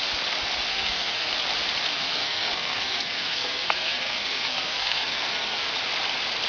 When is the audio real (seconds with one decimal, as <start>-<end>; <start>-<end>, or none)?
0.0-0.7; 1.3-1.9; 5.7-6.5